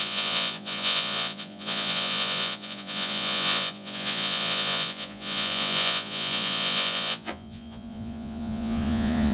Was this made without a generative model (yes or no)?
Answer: no